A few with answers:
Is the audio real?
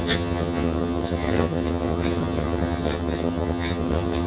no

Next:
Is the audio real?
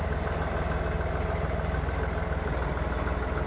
yes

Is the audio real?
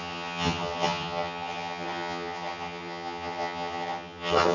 no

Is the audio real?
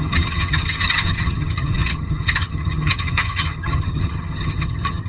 no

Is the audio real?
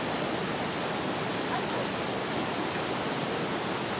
yes